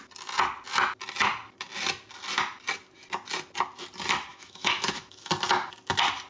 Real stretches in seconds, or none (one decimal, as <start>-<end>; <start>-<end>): 0.0-4.3; 5.3-6.3